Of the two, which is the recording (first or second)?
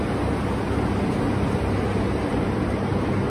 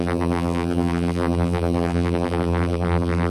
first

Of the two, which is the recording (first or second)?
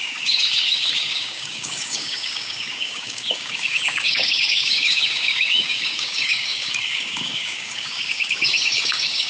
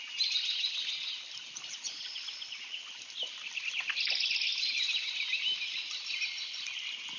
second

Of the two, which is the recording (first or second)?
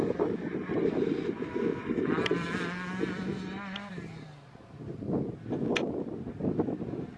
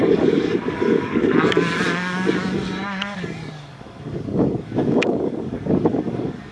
first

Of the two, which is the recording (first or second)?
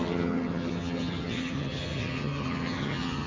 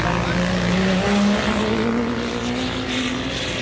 second